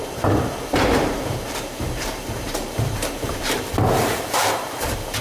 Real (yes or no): no